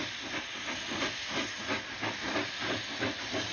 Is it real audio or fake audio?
real